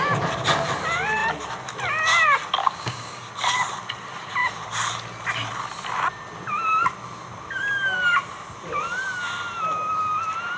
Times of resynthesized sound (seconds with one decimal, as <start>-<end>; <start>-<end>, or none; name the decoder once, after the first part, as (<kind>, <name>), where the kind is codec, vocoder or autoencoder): 2.6-3.3 (codec, DAC)